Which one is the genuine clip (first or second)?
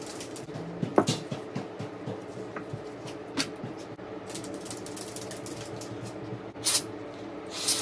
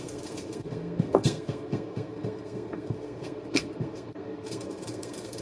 first